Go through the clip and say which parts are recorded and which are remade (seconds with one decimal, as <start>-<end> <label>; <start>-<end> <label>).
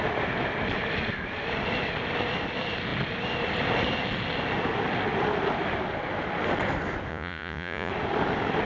0.0-7.1 recorded; 7.1-7.9 remade; 7.9-8.6 recorded